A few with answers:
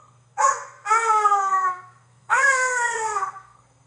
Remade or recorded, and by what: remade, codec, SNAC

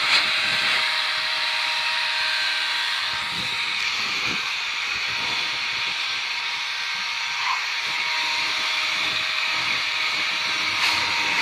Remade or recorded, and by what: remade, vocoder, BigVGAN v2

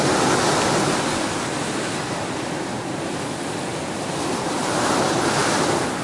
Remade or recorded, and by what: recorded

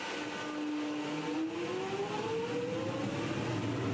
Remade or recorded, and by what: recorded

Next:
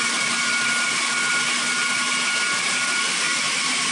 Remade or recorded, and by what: recorded